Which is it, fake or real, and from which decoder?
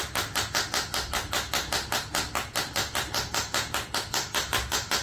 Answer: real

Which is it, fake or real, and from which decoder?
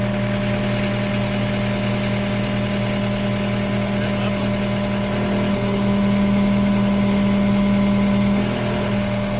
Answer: real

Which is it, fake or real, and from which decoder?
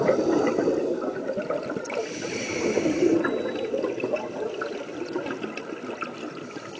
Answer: real